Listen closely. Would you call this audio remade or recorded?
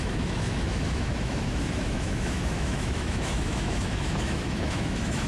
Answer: remade